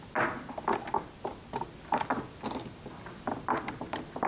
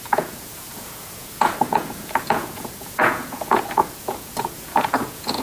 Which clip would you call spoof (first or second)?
second